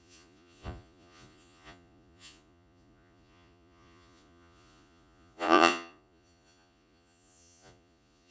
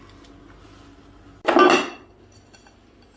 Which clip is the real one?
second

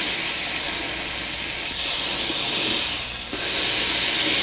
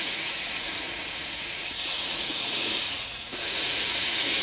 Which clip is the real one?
first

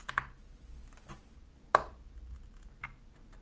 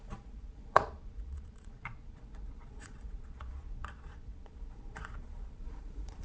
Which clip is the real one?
first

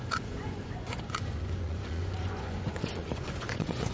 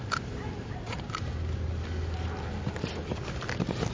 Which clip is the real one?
second